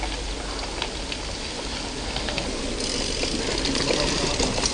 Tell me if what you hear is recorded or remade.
recorded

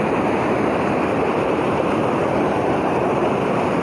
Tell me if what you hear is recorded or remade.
remade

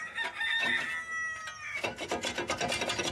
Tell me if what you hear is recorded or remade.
recorded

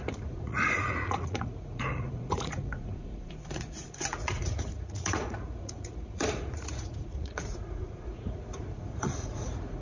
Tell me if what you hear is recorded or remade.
remade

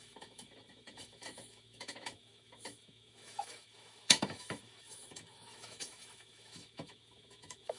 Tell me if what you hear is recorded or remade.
remade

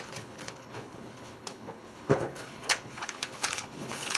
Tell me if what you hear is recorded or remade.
remade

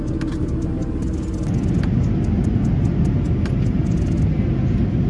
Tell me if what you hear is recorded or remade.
recorded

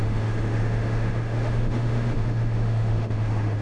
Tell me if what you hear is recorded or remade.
remade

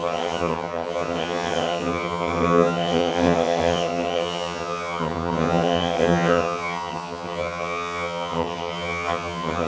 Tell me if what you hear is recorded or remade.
remade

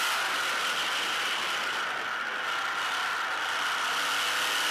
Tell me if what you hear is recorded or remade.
recorded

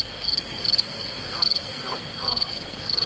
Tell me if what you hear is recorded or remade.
remade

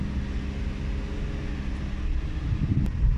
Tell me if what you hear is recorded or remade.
recorded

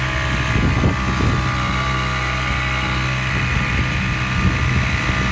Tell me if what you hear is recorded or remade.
recorded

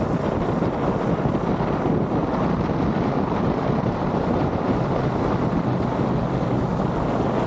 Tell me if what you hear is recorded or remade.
recorded